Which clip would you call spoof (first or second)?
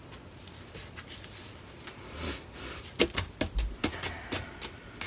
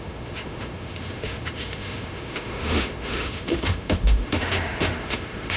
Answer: second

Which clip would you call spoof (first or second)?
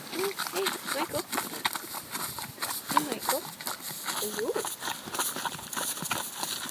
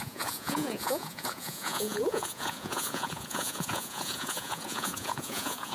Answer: second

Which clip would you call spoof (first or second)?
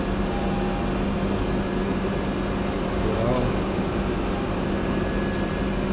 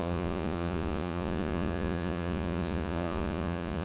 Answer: second